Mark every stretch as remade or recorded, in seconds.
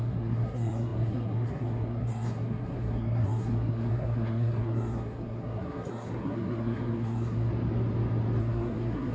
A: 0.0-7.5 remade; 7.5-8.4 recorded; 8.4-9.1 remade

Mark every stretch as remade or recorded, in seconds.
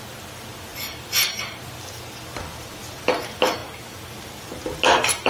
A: 0.0-0.7 recorded; 0.7-3.1 remade; 3.1-5.3 recorded